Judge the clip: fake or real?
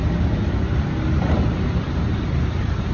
real